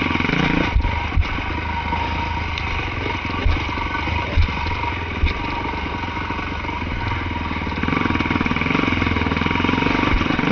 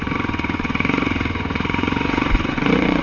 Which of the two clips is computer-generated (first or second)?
second